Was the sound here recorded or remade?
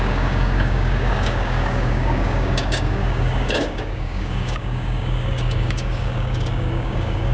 remade